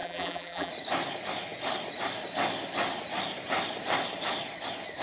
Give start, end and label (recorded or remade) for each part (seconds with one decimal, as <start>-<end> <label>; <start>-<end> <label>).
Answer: 0.0-0.7 remade; 0.7-5.0 recorded